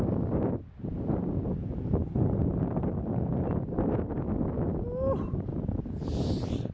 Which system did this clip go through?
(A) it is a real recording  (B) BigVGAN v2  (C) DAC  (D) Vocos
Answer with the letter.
A